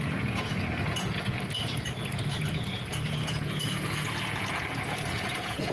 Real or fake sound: fake